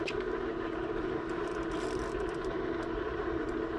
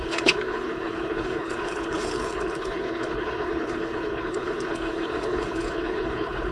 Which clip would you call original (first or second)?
first